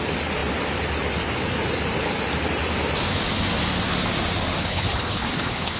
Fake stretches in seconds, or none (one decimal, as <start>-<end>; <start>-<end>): 4.6-5.8